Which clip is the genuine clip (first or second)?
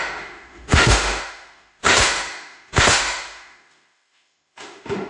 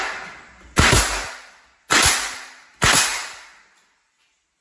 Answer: second